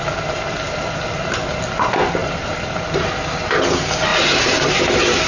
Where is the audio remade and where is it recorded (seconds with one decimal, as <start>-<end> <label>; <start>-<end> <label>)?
0.0-2.2 recorded; 2.2-3.1 remade; 3.1-5.3 recorded